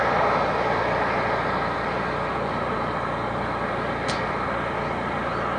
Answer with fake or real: real